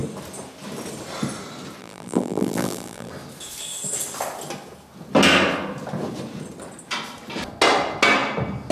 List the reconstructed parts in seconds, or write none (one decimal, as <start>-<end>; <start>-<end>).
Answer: 1.8-3.1